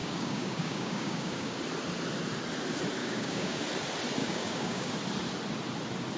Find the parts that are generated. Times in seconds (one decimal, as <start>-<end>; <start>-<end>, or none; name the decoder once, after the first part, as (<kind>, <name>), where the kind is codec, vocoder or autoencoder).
0.0-1.6 (codec, DAC); 3.0-3.6; 4.2-4.9